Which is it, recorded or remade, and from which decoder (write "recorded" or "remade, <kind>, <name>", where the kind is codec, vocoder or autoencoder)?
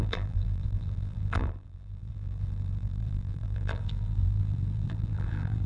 remade, vocoder, BigVGAN v2